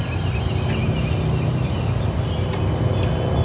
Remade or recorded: recorded